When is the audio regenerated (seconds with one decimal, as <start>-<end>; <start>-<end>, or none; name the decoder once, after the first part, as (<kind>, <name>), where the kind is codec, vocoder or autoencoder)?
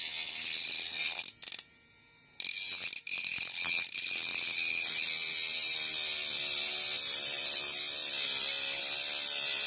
none